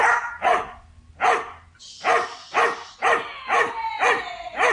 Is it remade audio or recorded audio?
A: recorded